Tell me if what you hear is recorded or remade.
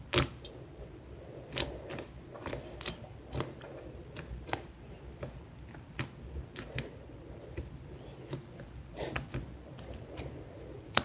recorded